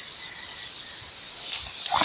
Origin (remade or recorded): recorded